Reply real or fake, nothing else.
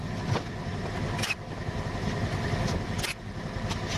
real